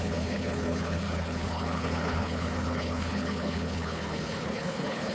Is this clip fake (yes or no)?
yes